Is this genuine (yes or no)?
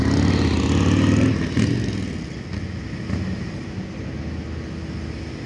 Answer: yes